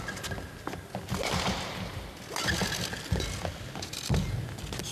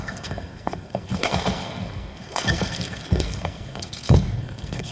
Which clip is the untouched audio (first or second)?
first